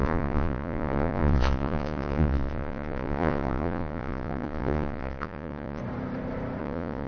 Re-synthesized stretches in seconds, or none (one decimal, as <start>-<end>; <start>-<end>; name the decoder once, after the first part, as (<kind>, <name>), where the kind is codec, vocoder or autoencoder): 0.0-5.8 (vocoder, Vocos); 6.6-7.1